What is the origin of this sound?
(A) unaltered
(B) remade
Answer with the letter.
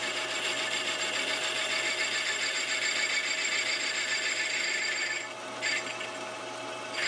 A